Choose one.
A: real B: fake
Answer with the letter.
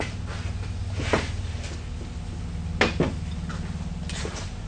A